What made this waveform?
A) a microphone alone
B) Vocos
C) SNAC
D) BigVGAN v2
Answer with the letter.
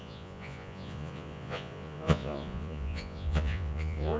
B